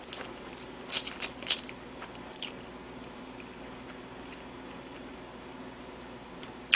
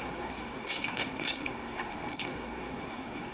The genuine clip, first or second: first